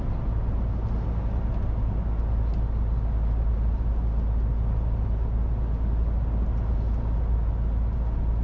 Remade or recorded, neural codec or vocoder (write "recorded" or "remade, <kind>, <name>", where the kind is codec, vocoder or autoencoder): recorded